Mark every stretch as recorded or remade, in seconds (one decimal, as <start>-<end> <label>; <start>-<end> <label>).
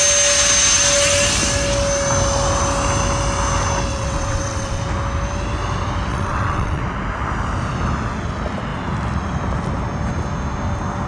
0.0-3.9 recorded; 3.9-4.8 remade; 4.8-6.1 recorded; 6.1-6.8 remade; 6.8-11.1 recorded